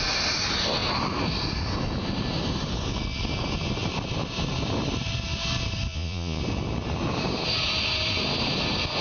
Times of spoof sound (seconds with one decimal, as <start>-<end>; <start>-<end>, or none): 5.9-6.4